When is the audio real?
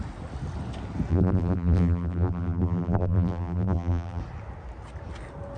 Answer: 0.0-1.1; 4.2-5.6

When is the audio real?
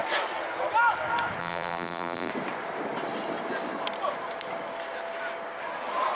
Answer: 0.0-1.4; 2.3-6.1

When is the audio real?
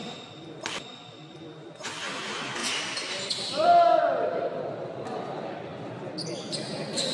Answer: 0.0-2.6; 4.0-7.1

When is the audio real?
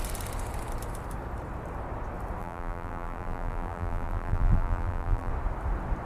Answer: 0.0-2.4; 5.3-6.0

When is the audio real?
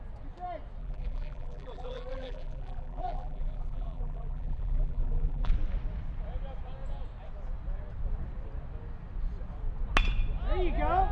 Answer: 0.0-0.8; 5.5-11.1